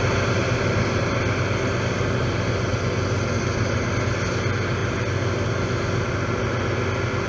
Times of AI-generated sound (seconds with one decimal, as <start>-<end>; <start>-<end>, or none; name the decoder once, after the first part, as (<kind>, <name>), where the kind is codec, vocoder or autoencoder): none